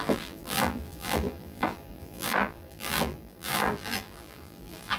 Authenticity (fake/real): fake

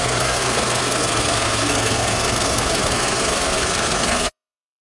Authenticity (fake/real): fake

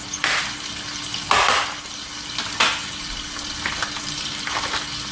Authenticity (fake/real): real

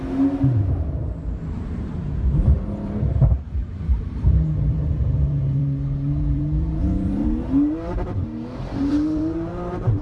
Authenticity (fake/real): fake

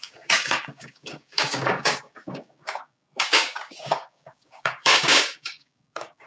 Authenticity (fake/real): fake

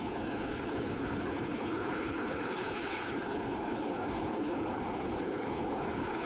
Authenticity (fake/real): fake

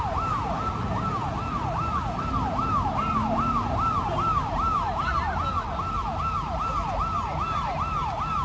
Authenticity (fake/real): real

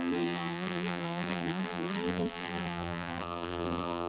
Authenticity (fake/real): fake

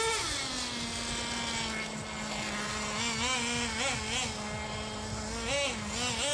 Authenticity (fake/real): real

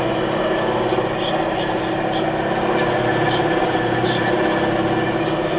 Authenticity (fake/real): real